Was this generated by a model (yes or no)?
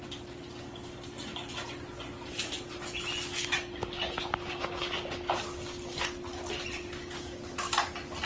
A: no